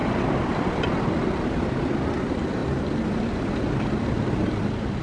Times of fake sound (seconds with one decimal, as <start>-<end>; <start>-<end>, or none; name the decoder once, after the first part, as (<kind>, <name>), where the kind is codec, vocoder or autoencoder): 2.6-3.3 (vocoder, BigVGAN v2)